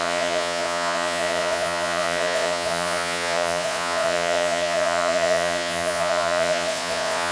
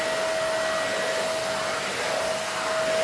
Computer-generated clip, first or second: first